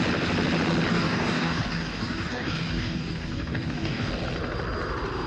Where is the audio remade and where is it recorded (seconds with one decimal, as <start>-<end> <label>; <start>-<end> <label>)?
0.0-0.9 recorded; 0.9-4.1 remade; 4.1-5.3 recorded